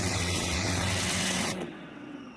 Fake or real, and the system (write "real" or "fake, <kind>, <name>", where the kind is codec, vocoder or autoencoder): fake, vocoder, WaveNeXt